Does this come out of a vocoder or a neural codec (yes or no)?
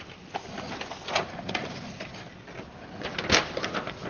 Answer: no